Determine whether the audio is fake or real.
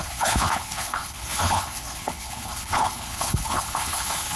fake